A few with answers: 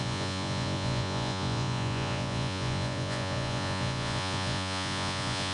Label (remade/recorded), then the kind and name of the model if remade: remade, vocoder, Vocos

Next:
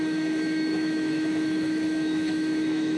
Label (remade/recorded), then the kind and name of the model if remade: remade, autoencoder, DAC-VAE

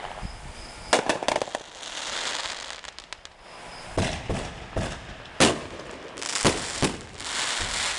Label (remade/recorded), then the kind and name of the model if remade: recorded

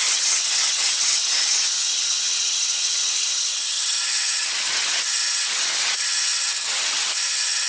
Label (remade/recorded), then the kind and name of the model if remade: remade, vocoder, HiFi-GAN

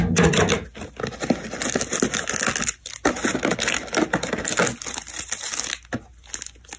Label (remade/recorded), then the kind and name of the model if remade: recorded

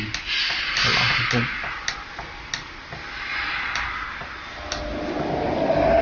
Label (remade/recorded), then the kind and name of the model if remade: recorded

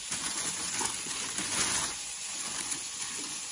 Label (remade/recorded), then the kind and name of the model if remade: remade, vocoder, Vocos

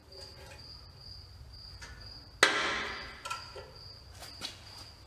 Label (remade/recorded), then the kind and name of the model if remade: recorded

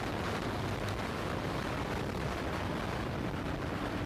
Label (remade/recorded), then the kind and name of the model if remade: recorded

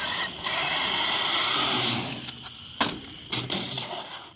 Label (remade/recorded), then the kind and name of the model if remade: recorded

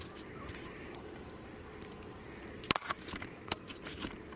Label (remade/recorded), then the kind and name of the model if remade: recorded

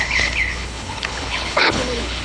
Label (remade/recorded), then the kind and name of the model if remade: remade, codec, HILCodec